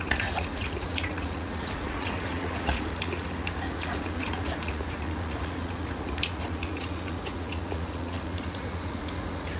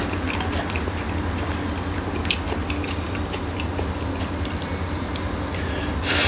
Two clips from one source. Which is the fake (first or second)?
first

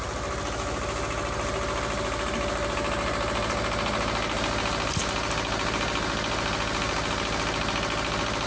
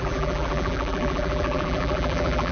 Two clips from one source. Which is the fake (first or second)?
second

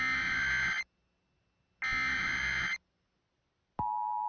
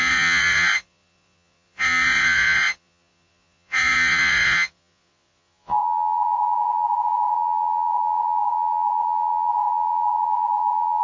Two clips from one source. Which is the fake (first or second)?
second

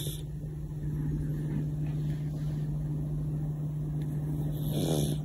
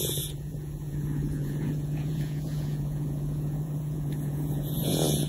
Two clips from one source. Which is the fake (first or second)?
second